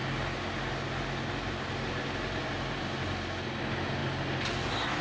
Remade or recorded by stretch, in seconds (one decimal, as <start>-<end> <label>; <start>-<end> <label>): 0.0-5.0 recorded